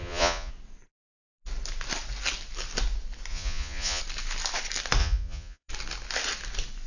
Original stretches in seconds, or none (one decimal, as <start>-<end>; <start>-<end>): 0.5-3.3; 4.0-5.0; 5.7-6.9